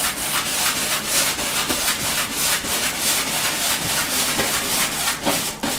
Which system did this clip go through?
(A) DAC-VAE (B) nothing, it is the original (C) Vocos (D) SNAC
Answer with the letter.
B